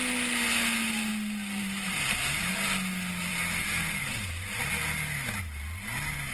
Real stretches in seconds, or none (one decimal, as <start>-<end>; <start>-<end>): 0.0-1.1; 2.2-3.3; 4.7-6.3